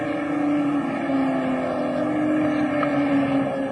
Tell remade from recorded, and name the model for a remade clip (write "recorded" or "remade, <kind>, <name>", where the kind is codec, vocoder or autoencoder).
recorded